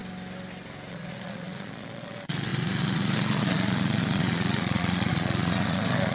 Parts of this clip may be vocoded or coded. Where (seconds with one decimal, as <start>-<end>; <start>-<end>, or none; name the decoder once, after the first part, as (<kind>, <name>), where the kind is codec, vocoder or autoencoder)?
0.9-6.1 (vocoder, Vocos)